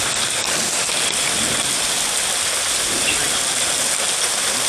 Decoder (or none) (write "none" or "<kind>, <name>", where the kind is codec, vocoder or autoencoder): none